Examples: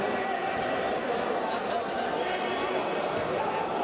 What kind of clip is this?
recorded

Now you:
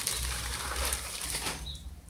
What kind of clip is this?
remade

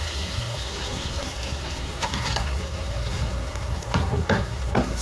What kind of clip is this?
remade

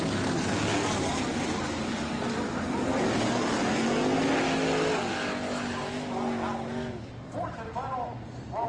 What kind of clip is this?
recorded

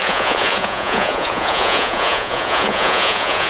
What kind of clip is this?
remade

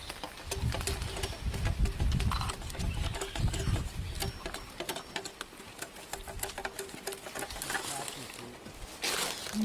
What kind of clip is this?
recorded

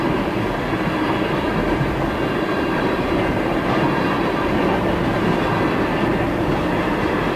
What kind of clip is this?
recorded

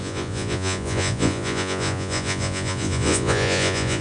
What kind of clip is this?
remade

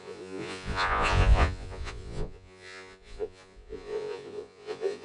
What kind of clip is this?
remade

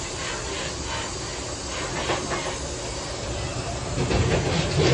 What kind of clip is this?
recorded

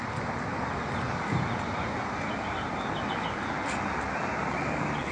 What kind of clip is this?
recorded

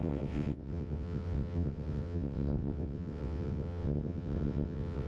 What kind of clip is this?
remade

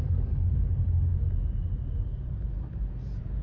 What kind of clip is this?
recorded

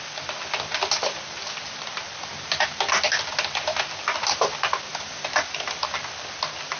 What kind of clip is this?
recorded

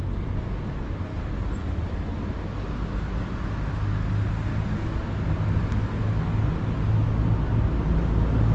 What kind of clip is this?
recorded